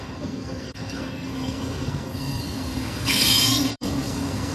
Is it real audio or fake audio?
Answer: fake